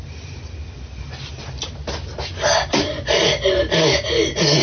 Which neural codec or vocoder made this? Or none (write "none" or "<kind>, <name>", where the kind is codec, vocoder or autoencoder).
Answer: none